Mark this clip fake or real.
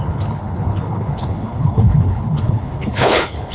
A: fake